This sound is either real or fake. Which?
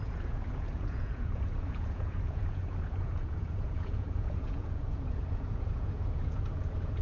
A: fake